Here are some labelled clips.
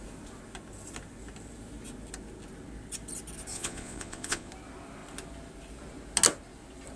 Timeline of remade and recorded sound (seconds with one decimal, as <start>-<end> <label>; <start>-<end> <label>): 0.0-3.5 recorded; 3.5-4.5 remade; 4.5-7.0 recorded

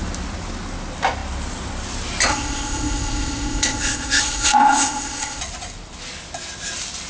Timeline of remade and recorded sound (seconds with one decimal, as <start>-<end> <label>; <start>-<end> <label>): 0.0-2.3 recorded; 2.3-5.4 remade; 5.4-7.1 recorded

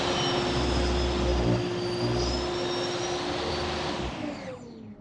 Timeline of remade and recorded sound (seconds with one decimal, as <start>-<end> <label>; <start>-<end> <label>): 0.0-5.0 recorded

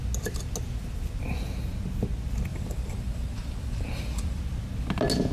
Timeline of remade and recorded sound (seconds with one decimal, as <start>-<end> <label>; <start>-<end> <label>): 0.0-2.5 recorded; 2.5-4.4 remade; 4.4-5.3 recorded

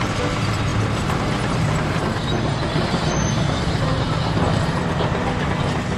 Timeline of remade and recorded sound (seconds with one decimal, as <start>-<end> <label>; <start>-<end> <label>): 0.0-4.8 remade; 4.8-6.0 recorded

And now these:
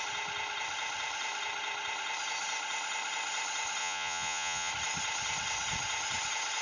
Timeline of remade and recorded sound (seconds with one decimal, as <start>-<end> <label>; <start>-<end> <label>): 0.0-3.8 recorded; 3.8-4.7 remade; 4.7-6.6 recorded

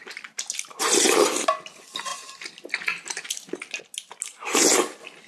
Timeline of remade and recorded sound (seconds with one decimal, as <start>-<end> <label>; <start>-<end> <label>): 0.0-5.3 recorded